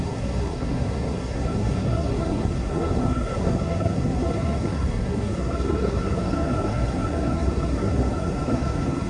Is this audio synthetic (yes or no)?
yes